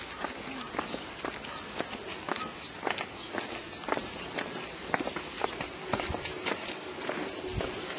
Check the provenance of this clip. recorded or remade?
recorded